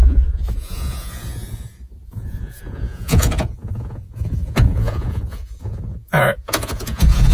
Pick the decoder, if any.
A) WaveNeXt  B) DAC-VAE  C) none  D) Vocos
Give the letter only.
D